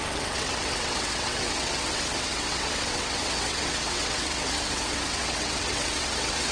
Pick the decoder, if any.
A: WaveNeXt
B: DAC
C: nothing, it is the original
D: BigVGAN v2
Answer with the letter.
A